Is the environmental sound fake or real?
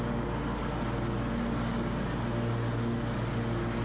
real